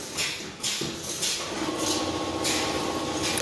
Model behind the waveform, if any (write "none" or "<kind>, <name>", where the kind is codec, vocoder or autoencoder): none